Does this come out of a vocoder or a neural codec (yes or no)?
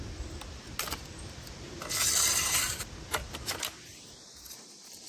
no